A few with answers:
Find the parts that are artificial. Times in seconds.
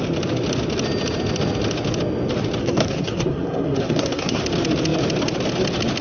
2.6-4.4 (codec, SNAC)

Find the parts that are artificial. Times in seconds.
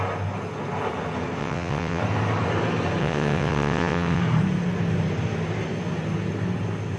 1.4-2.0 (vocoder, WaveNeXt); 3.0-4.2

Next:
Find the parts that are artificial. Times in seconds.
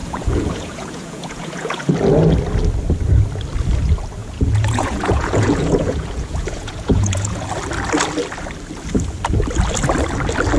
0.0-1.9 (vocoder, Vocos); 4.2-7.5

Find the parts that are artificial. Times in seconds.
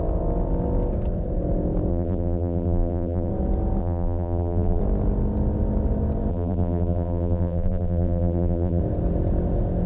1.9-3.3 (vocoder, BigVGAN v2); 3.8-4.8; 6.3-8.8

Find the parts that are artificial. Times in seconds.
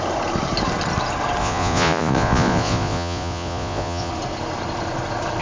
1.4-4.1 (vocoder, Vocos)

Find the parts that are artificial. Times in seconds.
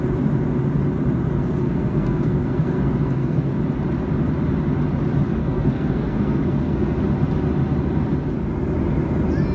1.3-3.5 (codec, SNAC); 5.4-7.0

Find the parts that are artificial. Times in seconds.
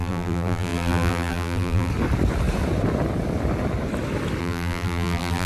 0.0-1.9 (vocoder, BigVGAN v2); 4.4-5.5